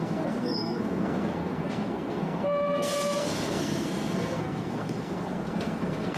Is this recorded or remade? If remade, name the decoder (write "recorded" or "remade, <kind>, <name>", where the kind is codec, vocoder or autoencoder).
remade, codec, SNAC